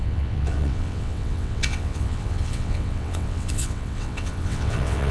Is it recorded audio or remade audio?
remade